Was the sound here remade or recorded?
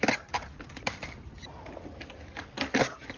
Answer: recorded